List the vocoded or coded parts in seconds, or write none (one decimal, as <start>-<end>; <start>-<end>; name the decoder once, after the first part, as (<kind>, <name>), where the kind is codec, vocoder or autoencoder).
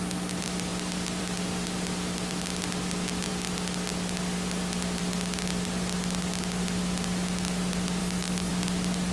8.0-8.5 (autoencoder, DAC-VAE)